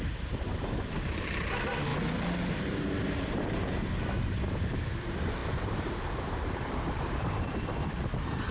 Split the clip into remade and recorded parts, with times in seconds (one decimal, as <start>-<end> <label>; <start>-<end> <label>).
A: 0.0-1.9 remade; 1.9-2.5 recorded; 2.5-7.8 remade; 7.8-8.5 recorded